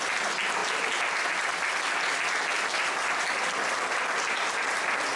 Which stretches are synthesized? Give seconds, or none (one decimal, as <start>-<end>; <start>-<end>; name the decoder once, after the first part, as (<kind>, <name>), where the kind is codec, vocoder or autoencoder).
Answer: none